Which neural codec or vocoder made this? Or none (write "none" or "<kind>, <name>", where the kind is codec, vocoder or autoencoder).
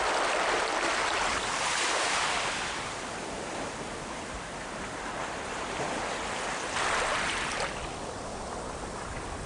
vocoder, BigVGAN v2